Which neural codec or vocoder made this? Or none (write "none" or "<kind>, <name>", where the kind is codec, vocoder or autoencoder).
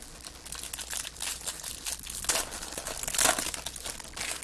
none